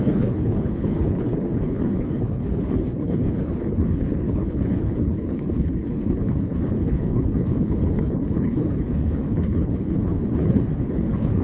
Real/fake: fake